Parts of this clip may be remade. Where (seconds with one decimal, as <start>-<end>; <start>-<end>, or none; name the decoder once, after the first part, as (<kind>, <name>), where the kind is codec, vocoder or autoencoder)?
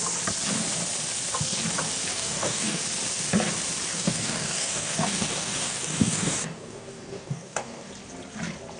2.1-2.8 (codec, DAC); 3.9-7.9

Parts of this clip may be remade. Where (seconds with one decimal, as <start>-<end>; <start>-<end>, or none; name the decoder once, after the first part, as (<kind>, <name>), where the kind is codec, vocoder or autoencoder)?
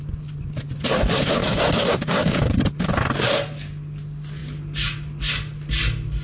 1.4-2.6 (codec, DAC)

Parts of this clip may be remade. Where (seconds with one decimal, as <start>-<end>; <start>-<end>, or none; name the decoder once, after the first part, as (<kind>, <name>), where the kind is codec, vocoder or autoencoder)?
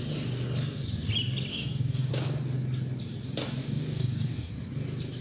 1.5-2.1 (codec, DAC); 3.6-4.5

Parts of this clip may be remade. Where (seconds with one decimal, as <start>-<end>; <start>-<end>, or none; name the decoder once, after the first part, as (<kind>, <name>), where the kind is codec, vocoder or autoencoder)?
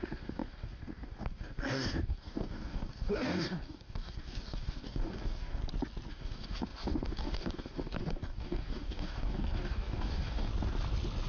0.0-5.6 (codec, DAC); 6.1-10.5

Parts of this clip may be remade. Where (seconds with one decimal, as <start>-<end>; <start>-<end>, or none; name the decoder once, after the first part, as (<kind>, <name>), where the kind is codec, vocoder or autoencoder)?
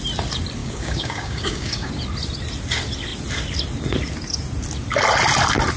0.6-1.9 (codec, DAC)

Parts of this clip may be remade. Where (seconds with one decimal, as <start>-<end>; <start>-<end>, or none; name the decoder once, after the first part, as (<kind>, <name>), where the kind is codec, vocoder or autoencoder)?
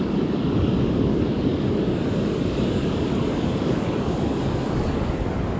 0.0-5.6 (codec, DAC)